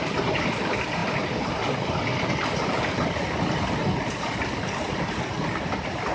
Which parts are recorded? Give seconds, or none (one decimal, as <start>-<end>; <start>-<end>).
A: 0.0-6.1